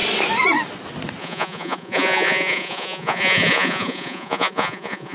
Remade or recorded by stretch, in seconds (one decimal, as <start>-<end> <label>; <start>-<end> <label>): 0.0-1.2 recorded; 1.2-5.1 remade